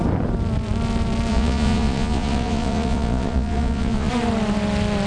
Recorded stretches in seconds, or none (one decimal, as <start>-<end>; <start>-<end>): 0.0-1.3; 4.1-5.1